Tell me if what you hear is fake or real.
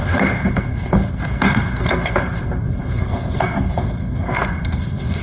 fake